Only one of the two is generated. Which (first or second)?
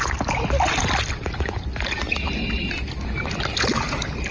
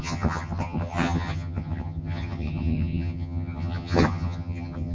second